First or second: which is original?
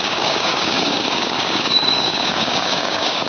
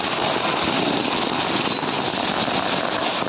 second